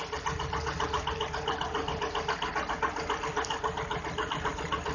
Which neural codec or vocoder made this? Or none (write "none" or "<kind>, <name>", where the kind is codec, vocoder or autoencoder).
none